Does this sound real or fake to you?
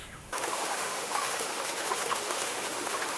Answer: fake